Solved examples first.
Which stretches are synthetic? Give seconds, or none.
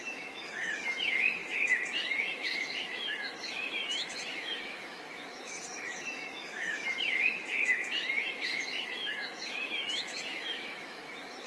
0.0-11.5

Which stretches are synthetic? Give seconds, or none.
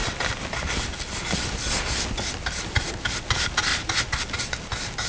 none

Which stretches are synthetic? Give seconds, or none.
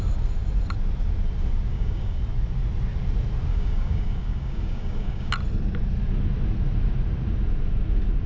1.7-2.2; 3.5-5.3